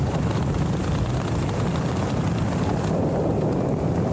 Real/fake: real